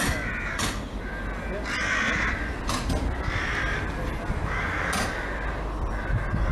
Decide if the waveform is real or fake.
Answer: real